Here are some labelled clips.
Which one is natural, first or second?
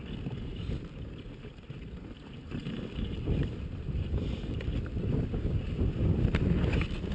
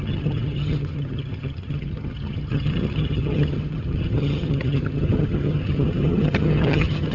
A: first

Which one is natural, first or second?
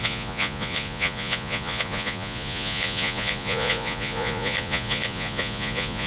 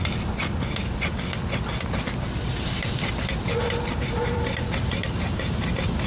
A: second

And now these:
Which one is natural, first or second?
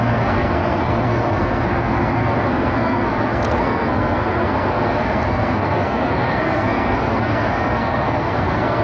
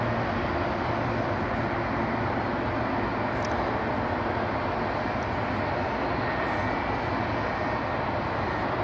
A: second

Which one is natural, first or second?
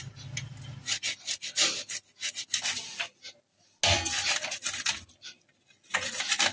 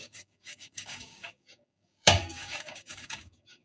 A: first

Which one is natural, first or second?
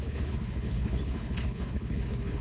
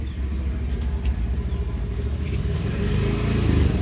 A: second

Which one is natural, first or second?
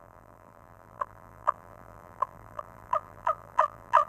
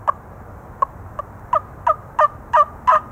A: second